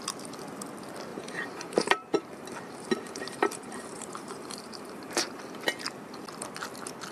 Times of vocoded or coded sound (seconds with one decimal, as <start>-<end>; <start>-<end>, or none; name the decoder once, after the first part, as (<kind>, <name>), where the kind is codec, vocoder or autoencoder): 1.1-5.4 (vocoder, BigVGAN v2)